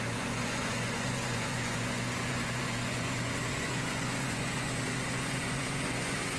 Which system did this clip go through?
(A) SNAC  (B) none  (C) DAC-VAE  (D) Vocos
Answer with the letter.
D